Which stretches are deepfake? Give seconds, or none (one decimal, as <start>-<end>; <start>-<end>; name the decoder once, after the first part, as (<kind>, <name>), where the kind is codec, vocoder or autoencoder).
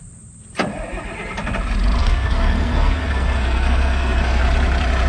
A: 2.0-4.4 (codec, SNAC)